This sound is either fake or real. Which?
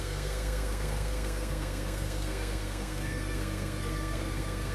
fake